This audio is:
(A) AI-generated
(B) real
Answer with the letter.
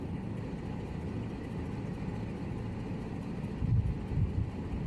B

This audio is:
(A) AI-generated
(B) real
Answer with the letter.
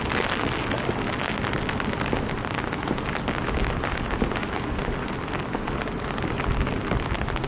B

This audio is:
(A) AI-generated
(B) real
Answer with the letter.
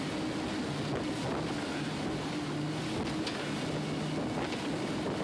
B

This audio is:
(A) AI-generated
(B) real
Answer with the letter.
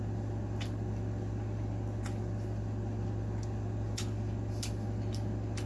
B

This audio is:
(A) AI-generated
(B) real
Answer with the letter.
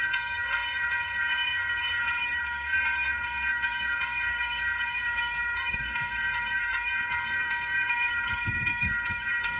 A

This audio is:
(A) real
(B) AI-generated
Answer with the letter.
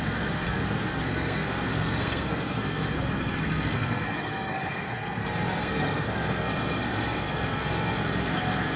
B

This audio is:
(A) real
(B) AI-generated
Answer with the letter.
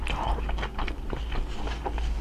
A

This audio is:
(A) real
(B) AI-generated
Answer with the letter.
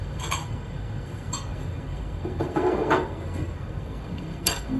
B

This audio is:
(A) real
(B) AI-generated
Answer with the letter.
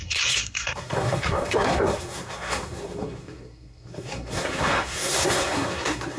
B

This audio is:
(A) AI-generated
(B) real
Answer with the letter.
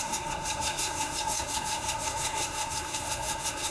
A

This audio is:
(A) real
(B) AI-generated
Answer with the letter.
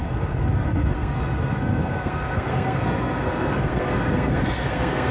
B